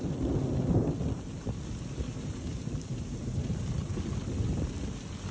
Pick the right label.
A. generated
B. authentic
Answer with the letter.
B